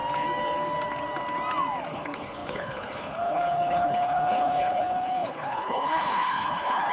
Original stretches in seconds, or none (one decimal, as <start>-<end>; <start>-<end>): 0.0-1.9